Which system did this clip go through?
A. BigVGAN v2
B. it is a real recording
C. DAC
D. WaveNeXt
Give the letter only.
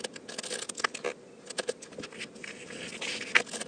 B